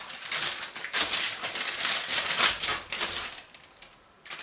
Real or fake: real